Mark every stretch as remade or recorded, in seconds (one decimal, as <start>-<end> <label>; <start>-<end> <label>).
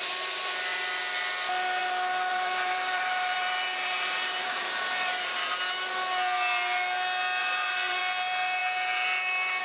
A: 0.0-2.3 recorded; 2.3-4.7 remade; 4.7-7.4 recorded; 7.4-8.0 remade; 8.0-9.6 recorded